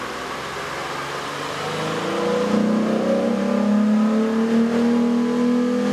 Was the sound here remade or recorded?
recorded